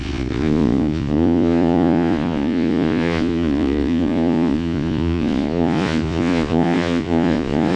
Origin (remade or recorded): remade